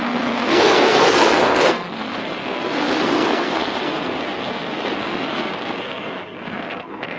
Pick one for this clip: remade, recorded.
remade